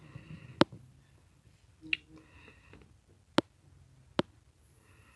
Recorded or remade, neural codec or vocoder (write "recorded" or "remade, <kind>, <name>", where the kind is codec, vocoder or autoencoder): recorded